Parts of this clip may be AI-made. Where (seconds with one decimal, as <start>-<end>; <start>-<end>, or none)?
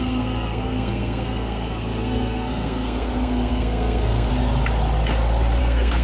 0.0-4.3; 5.6-6.0